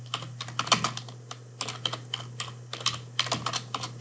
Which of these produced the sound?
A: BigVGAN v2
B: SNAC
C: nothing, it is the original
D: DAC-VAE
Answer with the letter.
C